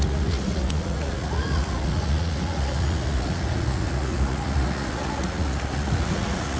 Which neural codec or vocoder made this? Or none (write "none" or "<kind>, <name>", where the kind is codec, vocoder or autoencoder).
vocoder, Vocos